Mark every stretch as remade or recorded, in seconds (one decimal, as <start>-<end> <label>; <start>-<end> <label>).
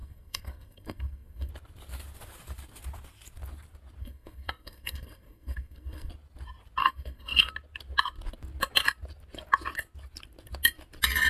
0.0-1.5 remade; 1.5-4.0 recorded; 4.0-6.1 remade; 6.1-6.8 recorded; 6.8-7.5 remade; 7.5-11.3 recorded